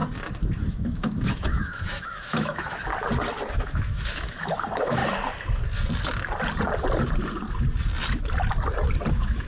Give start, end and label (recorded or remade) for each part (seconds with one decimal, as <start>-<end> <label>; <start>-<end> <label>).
0.0-0.7 recorded; 0.7-2.9 remade; 2.9-3.5 recorded; 3.5-5.0 remade; 5.0-9.1 recorded; 9.1-9.5 remade